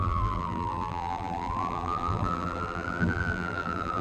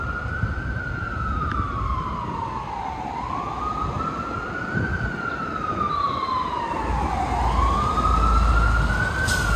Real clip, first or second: second